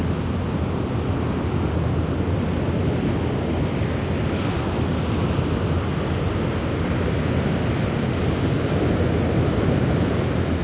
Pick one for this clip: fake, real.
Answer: real